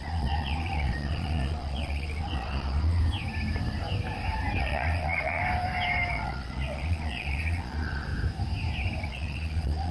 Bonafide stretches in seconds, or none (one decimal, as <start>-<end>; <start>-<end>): 3.0-4.6; 5.4-6.1; 8.1-9.0